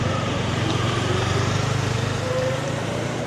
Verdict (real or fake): fake